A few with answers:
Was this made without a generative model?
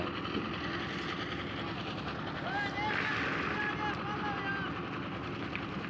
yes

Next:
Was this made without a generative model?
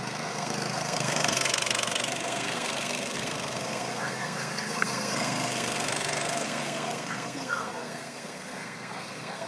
no